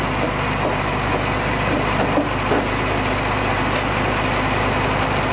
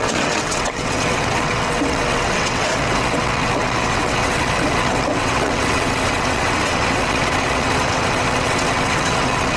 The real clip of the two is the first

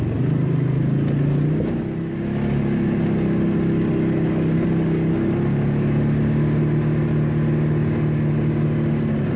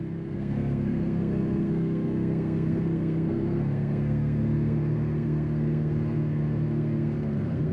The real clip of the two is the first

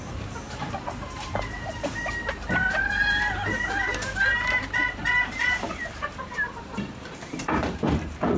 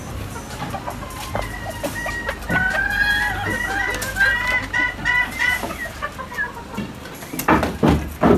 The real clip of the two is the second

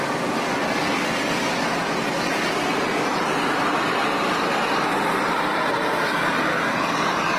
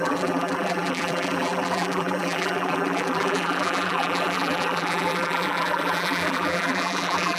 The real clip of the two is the first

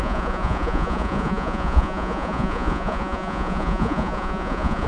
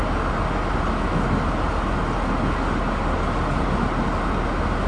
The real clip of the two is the second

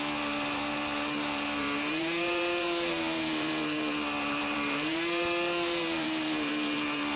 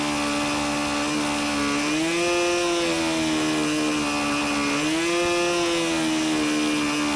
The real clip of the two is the second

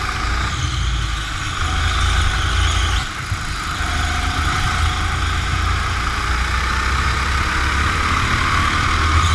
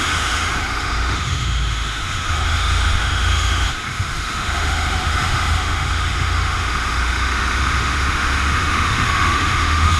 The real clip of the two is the first